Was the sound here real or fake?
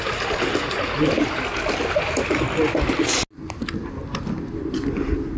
real